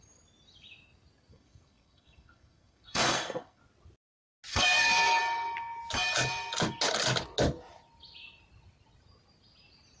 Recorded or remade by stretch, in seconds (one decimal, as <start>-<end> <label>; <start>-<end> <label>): 0.0-1.3 recorded; 1.3-3.6 remade; 3.6-4.5 recorded; 4.5-5.2 remade; 5.2-10.0 recorded